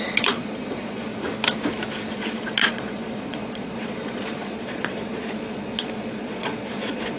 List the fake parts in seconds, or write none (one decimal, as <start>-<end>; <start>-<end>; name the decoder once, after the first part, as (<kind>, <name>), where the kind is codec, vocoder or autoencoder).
0.0-1.1 (vocoder, Vocos); 2.1-7.2